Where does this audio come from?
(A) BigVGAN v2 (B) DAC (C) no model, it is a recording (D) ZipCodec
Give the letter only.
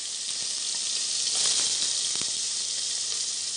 C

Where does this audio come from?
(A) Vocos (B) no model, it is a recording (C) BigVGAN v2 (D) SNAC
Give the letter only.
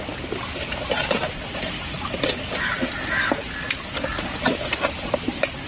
B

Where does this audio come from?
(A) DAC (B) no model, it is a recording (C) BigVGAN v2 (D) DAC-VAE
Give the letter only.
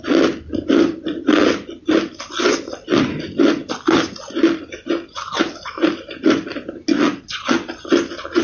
B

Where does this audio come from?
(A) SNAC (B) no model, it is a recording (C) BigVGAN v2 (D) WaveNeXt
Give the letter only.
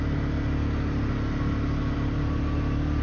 B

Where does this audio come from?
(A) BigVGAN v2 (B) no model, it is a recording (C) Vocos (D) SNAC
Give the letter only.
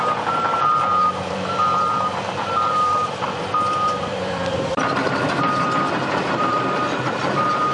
A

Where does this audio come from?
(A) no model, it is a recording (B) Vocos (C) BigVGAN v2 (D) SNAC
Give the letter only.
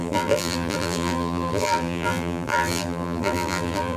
C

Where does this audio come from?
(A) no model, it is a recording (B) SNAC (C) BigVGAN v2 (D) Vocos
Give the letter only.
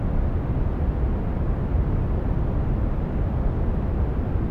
A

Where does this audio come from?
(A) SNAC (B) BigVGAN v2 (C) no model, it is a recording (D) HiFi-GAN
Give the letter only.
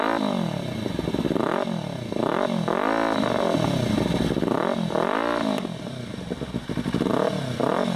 C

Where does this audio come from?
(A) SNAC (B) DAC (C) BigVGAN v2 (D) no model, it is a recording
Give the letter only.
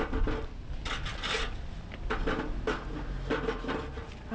D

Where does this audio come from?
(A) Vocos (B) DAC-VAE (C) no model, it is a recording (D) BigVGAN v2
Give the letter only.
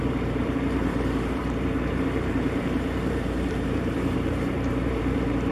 D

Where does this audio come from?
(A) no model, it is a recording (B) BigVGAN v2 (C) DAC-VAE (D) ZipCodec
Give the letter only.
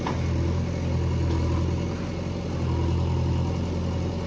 A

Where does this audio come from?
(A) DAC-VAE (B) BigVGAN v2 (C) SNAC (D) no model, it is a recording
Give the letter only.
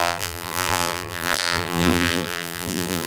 B